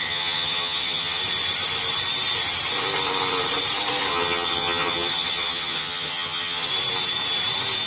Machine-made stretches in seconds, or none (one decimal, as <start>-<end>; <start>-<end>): 0.0-1.2; 4.1-6.7

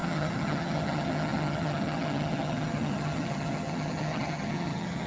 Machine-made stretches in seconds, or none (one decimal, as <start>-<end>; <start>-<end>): 0.0-5.1

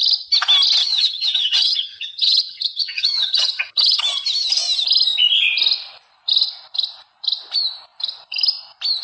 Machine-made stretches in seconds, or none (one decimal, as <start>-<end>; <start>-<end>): 0.8-4.0

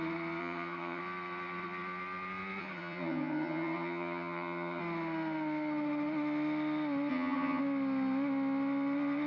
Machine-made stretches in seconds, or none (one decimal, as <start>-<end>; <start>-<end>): 0.4-1.0; 2.6-4.8; 7.1-7.6

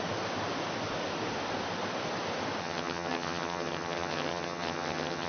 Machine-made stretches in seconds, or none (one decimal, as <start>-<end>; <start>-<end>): 2.6-5.3

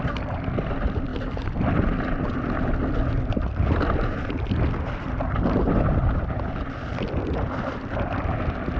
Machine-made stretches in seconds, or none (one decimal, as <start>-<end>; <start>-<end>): none

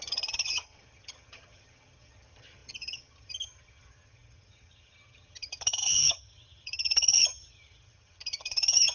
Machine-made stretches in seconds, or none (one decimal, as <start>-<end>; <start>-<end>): 0.0-8.9